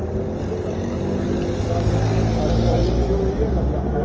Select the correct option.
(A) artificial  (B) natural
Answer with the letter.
B